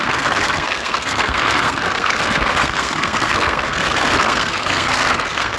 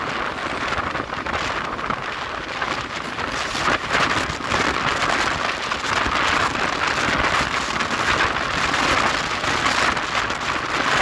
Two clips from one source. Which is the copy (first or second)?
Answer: first